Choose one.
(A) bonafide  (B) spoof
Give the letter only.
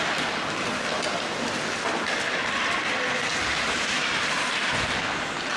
A